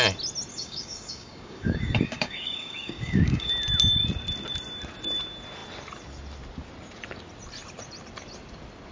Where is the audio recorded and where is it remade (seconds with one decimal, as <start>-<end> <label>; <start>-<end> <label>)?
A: 0.0-0.5 recorded; 0.5-3.5 remade; 3.5-8.9 recorded